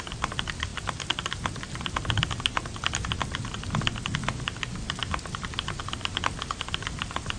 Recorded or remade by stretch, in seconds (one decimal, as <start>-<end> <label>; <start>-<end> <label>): 0.0-7.4 recorded